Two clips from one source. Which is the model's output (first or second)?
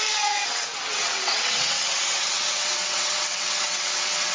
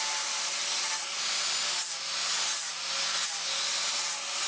first